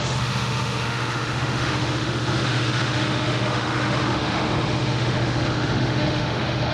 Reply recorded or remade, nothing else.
remade